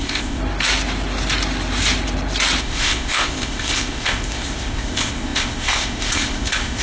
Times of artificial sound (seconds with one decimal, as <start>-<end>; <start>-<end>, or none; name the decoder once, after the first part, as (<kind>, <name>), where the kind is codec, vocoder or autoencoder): 0.0-0.4 (codec, ZipCodec); 2.6-6.8